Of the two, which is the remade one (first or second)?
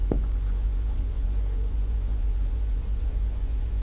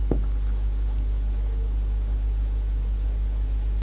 first